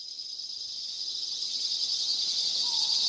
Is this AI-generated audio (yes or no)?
yes